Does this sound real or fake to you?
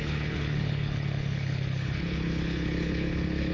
fake